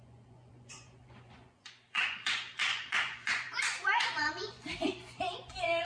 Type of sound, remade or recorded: remade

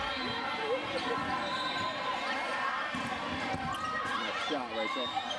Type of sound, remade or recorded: recorded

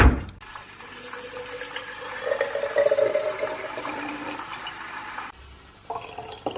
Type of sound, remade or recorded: recorded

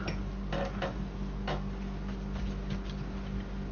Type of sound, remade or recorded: recorded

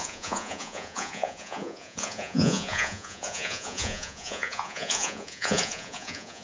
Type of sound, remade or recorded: remade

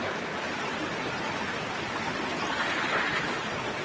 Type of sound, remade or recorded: recorded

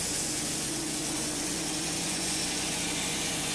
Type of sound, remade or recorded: remade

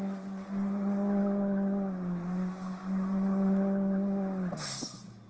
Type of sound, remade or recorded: recorded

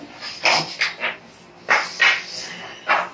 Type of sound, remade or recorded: recorded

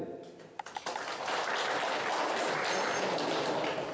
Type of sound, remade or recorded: recorded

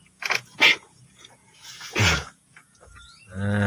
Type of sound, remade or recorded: remade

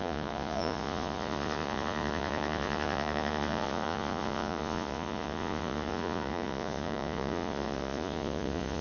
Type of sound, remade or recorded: remade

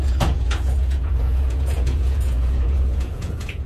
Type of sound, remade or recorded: remade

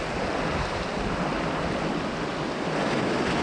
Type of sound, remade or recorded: recorded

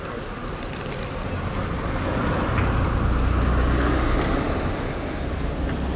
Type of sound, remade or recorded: recorded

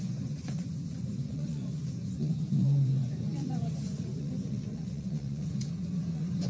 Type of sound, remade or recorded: remade